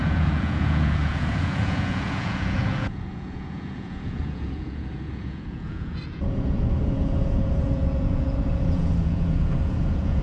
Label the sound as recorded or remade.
remade